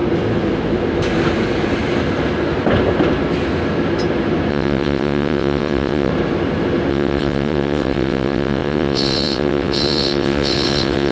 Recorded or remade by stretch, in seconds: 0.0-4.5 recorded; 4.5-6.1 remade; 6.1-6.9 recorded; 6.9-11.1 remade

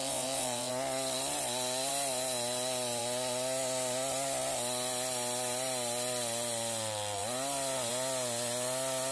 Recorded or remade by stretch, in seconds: 0.0-0.7 remade; 0.7-9.1 recorded

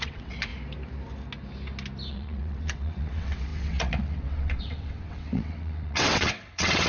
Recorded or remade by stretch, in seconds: 0.0-0.5 remade; 0.5-2.1 recorded; 2.1-6.9 remade